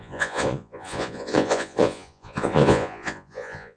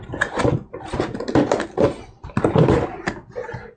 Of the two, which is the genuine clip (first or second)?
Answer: second